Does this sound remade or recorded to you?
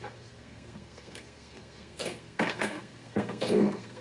remade